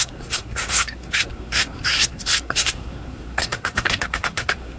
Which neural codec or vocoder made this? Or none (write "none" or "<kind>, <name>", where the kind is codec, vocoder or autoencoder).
codec, SNAC